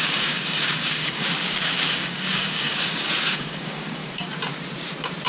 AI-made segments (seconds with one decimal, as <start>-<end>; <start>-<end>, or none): 0.0-4.0